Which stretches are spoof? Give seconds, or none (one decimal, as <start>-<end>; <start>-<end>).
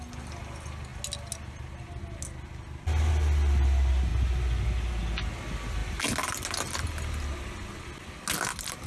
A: none